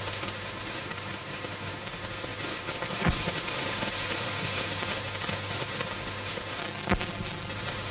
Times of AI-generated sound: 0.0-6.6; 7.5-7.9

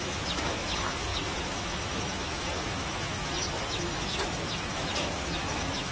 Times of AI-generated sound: 0.0-5.9

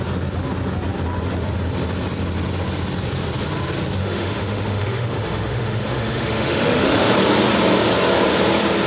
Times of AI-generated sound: 4.0-7.0

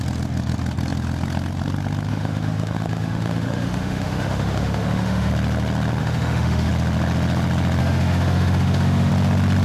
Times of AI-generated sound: 2.1-5.3; 6.0-6.7; 7.8-9.1

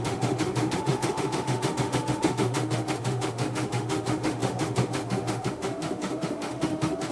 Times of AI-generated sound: 0.0-7.1

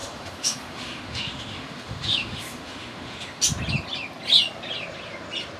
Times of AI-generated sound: 0.0-3.4